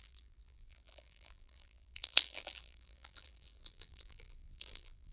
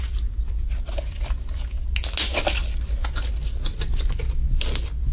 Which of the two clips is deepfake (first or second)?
first